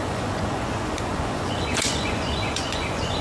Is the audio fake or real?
fake